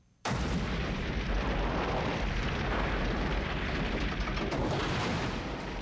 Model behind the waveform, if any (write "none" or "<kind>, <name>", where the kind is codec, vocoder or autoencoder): vocoder, BigVGAN v2